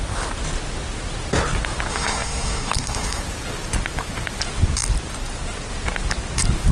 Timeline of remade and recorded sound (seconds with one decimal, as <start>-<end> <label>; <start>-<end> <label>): 0.0-1.9 recorded; 1.9-3.2 remade; 3.2-6.7 recorded